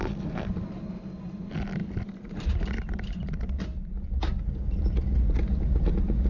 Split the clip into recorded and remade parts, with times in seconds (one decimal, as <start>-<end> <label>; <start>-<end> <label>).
0.0-1.8 recorded; 1.8-3.6 remade; 3.6-6.3 recorded